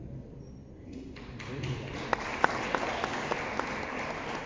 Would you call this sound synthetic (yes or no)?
no